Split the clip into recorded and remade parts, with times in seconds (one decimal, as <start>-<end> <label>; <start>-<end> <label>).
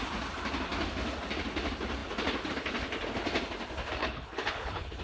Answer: 0.0-4.0 recorded; 4.0-5.0 remade